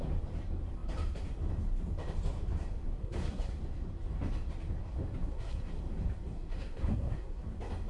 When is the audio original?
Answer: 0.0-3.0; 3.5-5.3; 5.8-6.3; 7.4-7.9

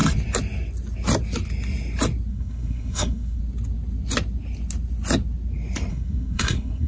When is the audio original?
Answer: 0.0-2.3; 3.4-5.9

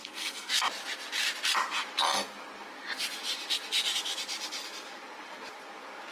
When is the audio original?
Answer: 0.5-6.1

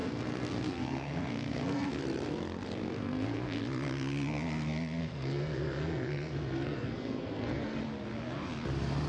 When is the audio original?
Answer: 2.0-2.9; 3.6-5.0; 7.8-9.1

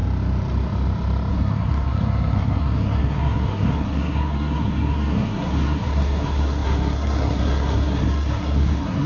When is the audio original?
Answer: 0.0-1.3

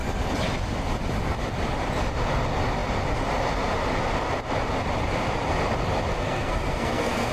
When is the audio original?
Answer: 0.0-6.1